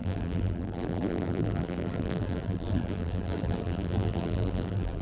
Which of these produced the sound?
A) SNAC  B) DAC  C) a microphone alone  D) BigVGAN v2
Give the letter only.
D